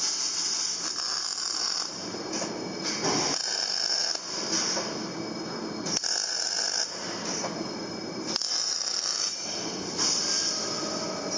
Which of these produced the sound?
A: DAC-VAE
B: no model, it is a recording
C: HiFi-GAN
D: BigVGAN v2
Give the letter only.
B